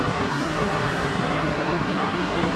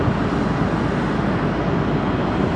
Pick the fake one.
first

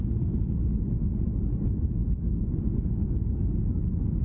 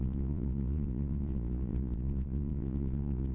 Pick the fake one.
second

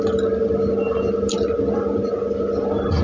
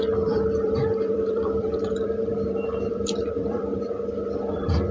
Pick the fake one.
second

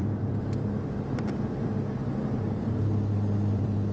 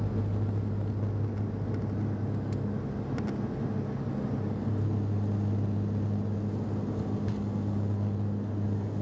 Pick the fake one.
first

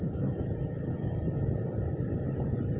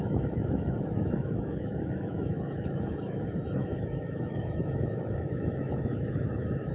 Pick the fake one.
second